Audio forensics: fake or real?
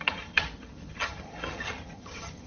fake